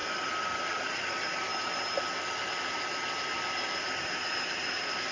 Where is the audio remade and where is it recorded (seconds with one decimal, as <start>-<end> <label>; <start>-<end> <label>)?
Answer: 0.0-1.5 remade; 1.5-4.4 recorded; 4.4-5.1 remade